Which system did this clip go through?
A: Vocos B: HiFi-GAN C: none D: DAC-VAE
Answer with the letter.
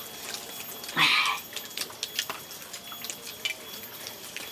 C